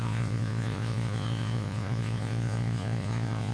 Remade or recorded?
remade